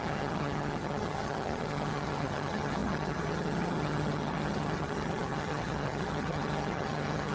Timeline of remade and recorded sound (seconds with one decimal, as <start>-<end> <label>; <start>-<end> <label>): 0.0-7.3 remade